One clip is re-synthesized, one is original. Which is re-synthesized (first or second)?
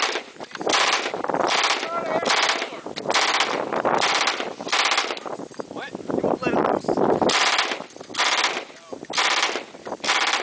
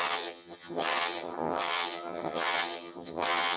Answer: second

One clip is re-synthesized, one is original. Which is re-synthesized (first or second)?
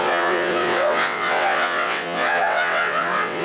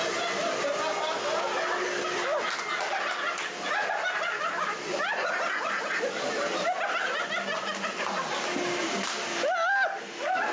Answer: first